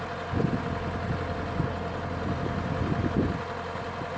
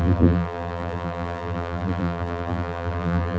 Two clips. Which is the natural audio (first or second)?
first